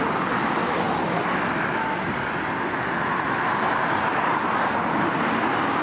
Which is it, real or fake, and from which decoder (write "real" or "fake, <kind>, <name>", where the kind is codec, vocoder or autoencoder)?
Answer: real